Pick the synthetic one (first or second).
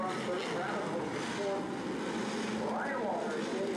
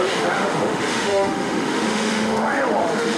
second